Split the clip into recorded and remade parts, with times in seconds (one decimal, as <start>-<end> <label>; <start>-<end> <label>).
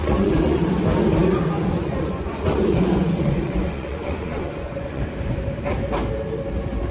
0.0-0.6 remade; 0.6-1.2 recorded; 1.2-5.0 remade; 5.0-6.9 recorded